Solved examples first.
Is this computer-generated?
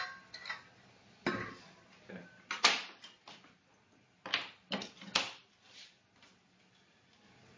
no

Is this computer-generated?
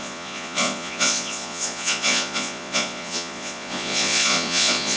yes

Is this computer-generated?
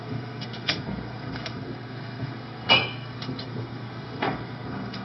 yes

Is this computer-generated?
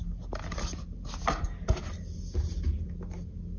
no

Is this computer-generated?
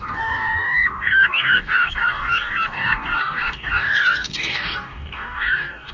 yes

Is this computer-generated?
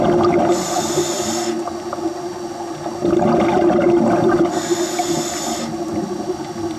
no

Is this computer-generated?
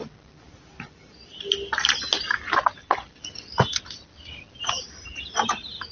no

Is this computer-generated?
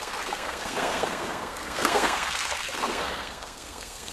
yes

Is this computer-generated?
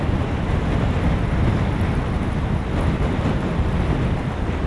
no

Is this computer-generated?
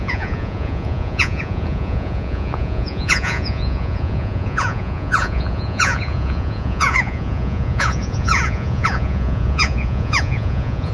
yes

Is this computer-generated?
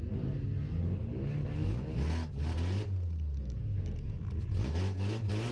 no